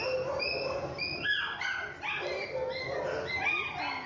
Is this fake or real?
real